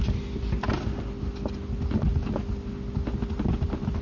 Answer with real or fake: real